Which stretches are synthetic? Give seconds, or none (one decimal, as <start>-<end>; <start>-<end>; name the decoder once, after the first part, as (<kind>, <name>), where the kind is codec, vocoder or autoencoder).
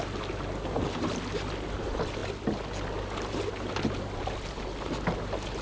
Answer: none